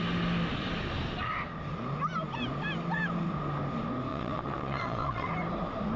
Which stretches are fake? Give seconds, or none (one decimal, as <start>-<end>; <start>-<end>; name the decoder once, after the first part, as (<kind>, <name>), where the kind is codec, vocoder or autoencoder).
4.1-5.3 (vocoder, Vocos)